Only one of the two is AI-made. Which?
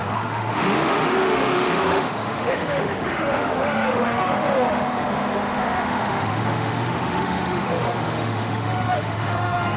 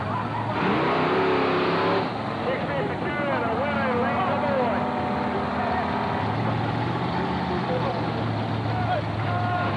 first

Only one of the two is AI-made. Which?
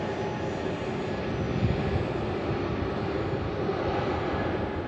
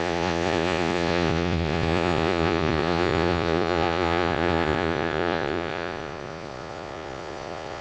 second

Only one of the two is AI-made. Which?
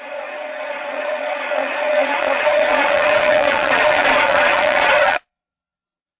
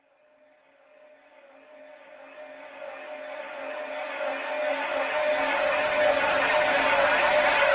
first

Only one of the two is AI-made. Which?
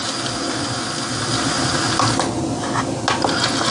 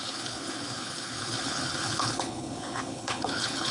second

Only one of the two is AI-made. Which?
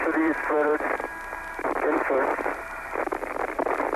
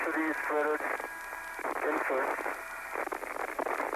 first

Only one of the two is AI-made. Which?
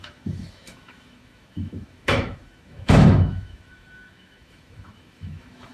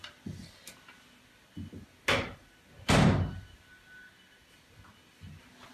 first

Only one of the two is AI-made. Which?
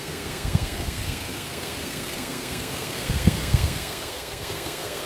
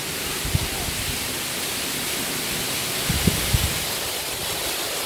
first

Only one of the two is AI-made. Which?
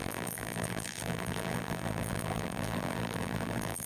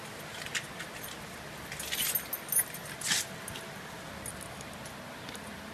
first